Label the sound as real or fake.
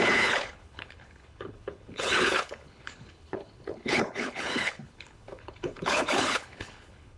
fake